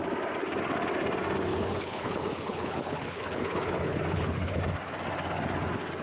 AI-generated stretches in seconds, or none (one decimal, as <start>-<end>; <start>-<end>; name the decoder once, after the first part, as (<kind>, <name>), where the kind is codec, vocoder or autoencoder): 1.5-4.6 (codec, HILCodec)